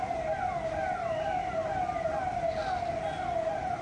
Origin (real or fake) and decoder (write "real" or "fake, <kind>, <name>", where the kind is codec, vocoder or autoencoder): real